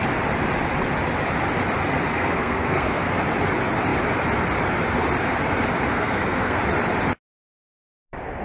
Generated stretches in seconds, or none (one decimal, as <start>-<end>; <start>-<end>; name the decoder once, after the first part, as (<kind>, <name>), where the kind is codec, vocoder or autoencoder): 2.1-3.2 (codec, SNAC); 5.9-6.6